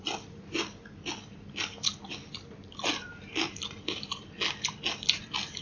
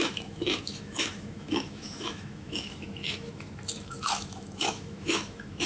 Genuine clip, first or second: first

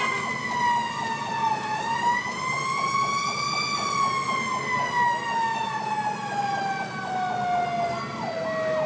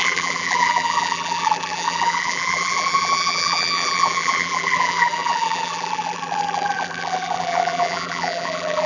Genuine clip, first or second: first